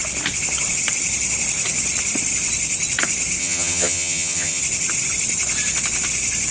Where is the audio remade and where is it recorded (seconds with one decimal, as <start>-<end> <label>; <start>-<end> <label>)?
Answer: 0.0-3.4 recorded; 3.4-4.6 remade; 4.6-6.5 recorded